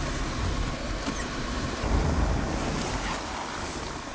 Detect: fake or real real